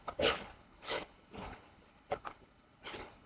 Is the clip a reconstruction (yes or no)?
yes